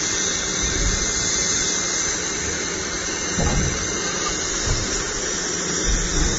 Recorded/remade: recorded